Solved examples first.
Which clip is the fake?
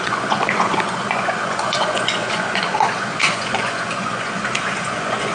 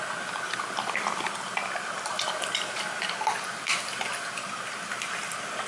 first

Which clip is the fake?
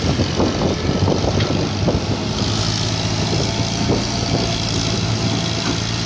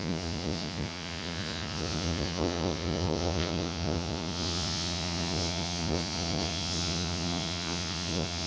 second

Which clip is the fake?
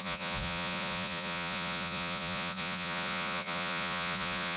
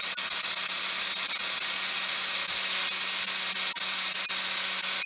first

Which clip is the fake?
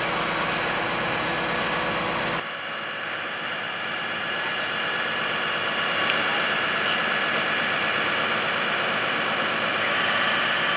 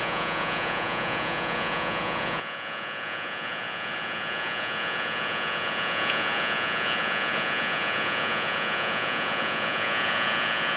second